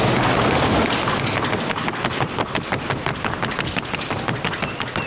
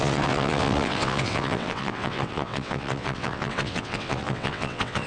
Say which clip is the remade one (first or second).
second